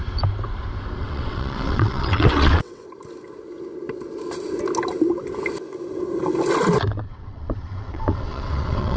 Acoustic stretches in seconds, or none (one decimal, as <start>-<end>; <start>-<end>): 0.0-1.0; 2.8-6.9